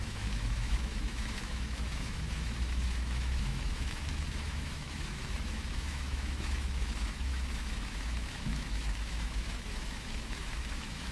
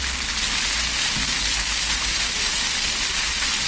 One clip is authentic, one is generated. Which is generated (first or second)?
first